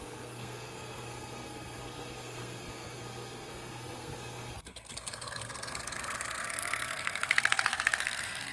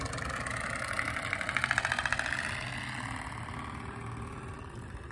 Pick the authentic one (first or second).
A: second